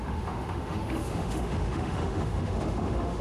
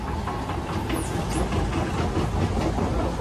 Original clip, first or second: second